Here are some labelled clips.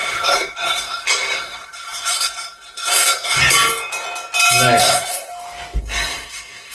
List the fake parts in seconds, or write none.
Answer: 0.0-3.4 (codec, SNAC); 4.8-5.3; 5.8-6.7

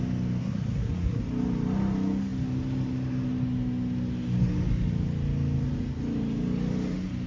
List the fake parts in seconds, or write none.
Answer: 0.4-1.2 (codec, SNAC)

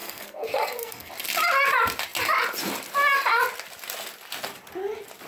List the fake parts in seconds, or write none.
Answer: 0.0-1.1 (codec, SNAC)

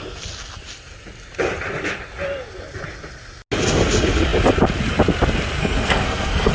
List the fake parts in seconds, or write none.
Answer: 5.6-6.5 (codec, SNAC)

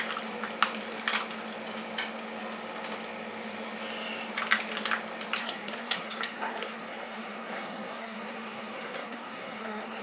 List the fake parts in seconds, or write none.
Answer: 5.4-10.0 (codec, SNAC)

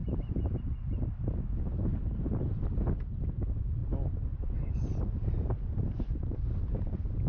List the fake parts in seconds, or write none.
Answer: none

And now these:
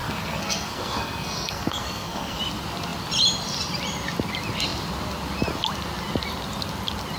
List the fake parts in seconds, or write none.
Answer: 0.0-2.4 (codec, SNAC)

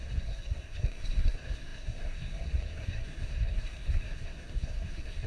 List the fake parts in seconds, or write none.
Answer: 0.0-5.3 (codec, SNAC)